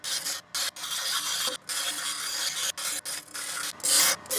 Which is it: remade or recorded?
recorded